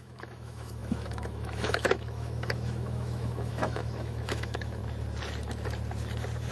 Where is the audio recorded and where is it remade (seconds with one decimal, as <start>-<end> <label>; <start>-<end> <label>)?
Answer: 0.0-4.8 remade; 4.8-6.5 recorded